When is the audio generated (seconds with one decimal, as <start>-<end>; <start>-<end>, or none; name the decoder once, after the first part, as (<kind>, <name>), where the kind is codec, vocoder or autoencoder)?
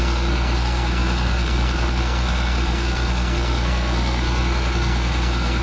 0.0-5.6 (codec, SNAC)